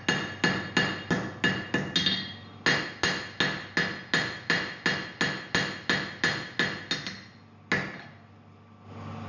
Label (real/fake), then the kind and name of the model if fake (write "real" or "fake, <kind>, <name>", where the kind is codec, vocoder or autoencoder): real